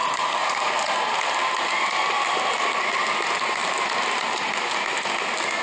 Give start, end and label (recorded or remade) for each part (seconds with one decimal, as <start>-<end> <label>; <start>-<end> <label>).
0.0-0.7 remade; 0.7-5.6 recorded